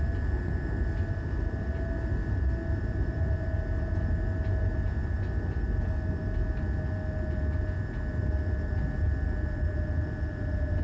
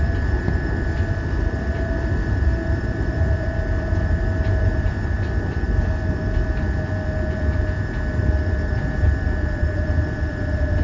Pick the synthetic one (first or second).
second